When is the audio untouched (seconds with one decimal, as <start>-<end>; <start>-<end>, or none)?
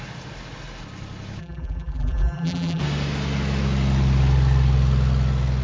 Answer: 0.0-1.4; 2.8-5.6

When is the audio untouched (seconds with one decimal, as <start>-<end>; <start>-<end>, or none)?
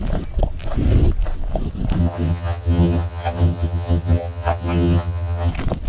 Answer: 0.0-2.0; 5.5-5.9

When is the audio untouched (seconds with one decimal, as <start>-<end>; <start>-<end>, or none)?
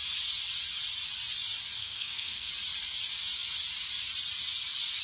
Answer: 0.0-1.8; 2.5-5.0